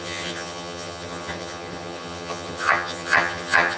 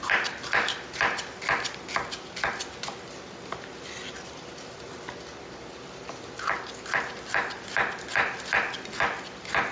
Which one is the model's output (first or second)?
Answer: first